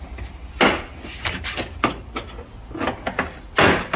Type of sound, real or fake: real